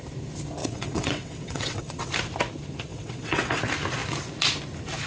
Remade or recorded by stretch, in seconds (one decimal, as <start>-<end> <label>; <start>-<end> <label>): 0.0-0.6 recorded; 0.6-2.1 remade; 2.1-2.9 recorded; 2.9-3.6 remade; 3.6-5.1 recorded